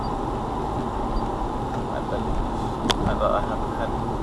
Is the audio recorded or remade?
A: recorded